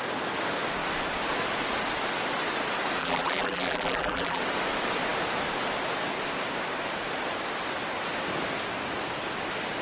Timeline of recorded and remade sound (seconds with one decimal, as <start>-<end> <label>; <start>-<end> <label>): 0.0-3.0 recorded; 3.0-4.4 remade; 4.4-9.8 recorded